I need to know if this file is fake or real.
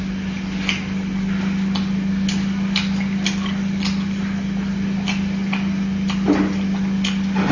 real